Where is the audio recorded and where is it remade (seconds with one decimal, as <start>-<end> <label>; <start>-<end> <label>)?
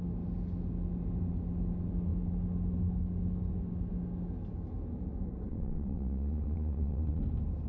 0.0-5.5 recorded; 5.5-7.2 remade; 7.2-7.7 recorded